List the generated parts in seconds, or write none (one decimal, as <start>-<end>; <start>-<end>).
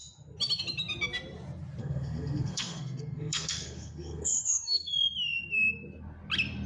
1.8-4.9